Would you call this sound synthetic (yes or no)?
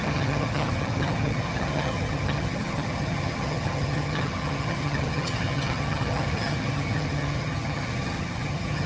yes